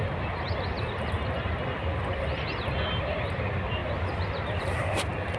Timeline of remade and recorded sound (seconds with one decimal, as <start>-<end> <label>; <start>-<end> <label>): 0.0-3.8 recorded; 3.8-4.8 remade; 4.8-5.4 recorded